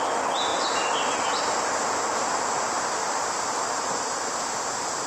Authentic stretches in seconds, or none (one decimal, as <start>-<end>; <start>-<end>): 0.0-5.1